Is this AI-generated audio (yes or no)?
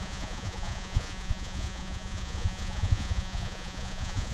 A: yes